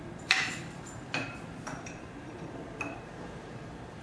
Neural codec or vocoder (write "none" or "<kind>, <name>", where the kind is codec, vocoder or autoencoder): vocoder, BigVGAN v2